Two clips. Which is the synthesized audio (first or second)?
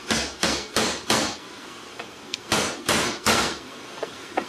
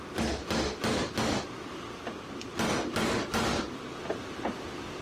first